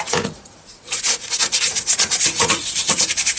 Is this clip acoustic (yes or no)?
no